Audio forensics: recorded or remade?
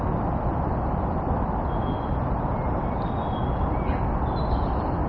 recorded